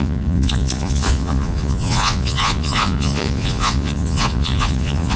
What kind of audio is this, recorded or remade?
remade